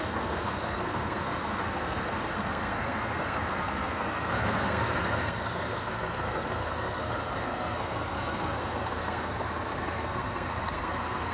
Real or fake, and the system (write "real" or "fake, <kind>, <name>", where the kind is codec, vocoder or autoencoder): fake, codec, SNAC